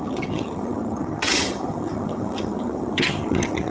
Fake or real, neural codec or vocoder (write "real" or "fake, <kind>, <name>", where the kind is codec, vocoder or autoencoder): fake, vocoder, HiFi-GAN